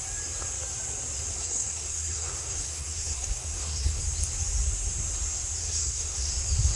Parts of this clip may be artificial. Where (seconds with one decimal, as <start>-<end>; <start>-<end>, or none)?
1.3-4.0; 5.6-6.3